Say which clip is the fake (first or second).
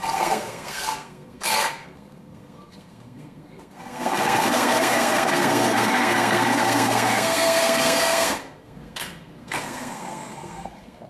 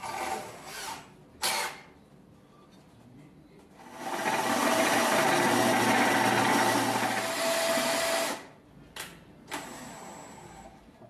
first